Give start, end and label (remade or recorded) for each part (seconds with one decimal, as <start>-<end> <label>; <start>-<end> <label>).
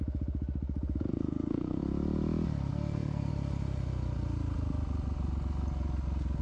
0.0-1.1 recorded; 1.1-1.8 remade; 1.8-2.7 recorded; 2.7-3.3 remade; 3.3-6.4 recorded